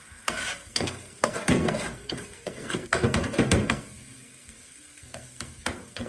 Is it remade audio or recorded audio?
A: remade